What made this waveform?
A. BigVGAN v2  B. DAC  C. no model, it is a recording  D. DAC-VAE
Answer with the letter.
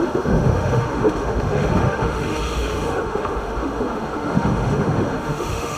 D